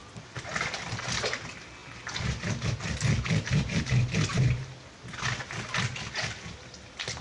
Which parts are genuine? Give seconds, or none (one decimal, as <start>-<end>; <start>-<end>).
0.0-7.2